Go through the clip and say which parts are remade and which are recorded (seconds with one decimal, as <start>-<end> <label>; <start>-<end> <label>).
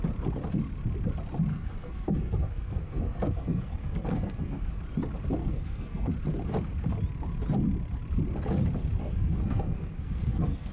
0.0-1.5 recorded; 1.5-4.8 remade; 4.8-5.4 recorded; 5.4-6.1 remade; 6.1-9.0 recorded; 9.0-10.7 remade